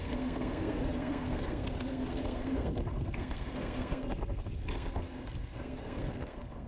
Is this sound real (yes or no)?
no